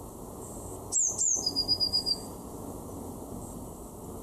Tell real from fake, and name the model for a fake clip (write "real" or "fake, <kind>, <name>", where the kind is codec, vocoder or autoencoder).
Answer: real